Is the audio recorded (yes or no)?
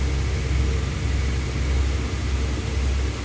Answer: yes